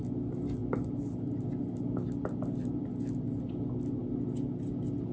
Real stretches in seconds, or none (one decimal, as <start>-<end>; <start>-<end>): 0.0-5.1